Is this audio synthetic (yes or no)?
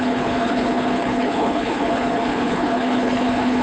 yes